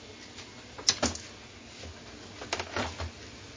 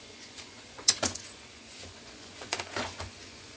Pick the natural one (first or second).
first